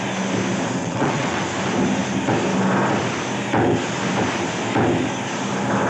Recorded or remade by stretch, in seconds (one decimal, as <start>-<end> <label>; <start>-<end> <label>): 0.0-0.8 recorded; 0.8-1.4 remade; 1.4-5.9 recorded